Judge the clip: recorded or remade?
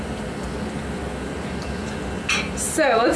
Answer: recorded